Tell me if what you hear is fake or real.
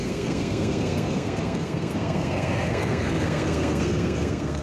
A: fake